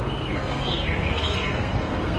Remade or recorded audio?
remade